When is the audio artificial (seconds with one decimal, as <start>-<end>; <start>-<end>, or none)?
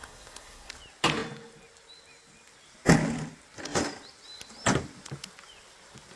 0.0-0.7